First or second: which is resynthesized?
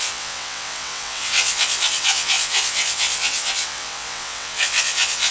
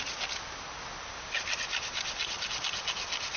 first